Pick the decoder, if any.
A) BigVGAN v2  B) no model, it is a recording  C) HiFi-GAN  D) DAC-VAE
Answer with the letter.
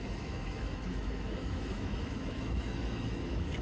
D